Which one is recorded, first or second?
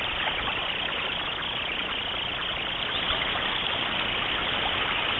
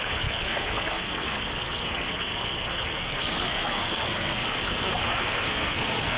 first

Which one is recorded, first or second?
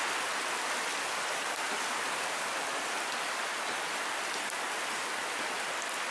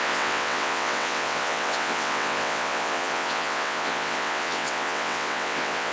first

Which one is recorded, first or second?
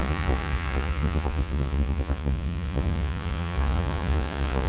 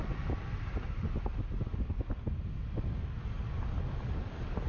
second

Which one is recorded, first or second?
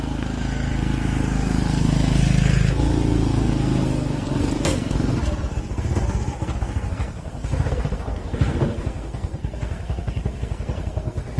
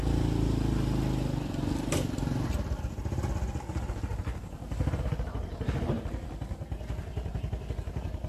second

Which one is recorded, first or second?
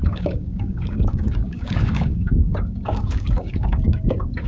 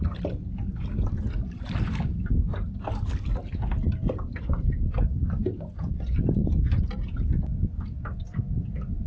second